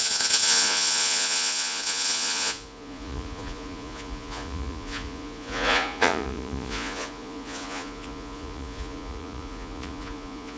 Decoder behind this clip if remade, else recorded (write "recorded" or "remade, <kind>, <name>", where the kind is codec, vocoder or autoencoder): remade, vocoder, Vocos